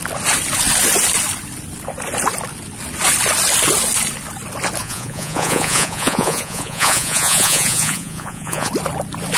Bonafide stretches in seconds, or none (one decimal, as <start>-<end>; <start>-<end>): 0.0-4.8; 8.7-9.4